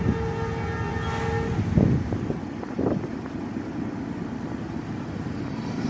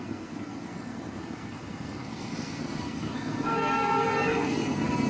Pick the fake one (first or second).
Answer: second